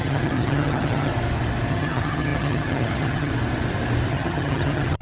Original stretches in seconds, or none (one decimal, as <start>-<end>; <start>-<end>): 1.1-1.7; 3.3-4.1